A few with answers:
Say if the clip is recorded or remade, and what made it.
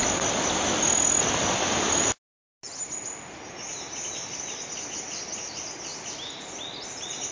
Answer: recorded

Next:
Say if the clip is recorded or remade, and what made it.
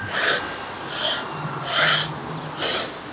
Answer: recorded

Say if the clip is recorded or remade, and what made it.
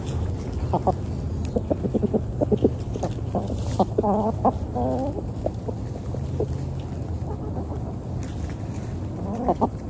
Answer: recorded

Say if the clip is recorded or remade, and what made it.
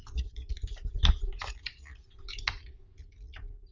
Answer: recorded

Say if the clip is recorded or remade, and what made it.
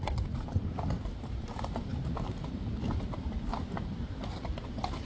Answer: remade, vocoder, BigVGAN v2